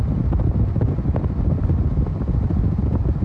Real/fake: real